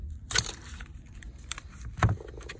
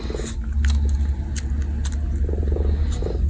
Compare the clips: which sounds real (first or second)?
second